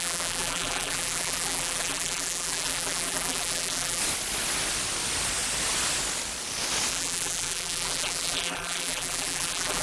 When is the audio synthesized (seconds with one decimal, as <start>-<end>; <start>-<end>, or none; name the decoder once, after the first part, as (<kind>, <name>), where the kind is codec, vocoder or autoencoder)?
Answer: 0.0-4.0 (vocoder, BigVGAN v2); 6.9-9.8